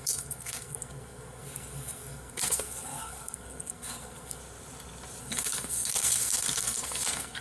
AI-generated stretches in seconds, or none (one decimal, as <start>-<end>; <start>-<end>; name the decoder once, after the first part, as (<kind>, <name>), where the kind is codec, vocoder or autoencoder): 0.0-4.4 (codec, SNAC); 5.2-7.4